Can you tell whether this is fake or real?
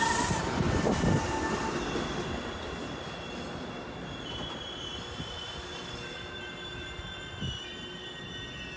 real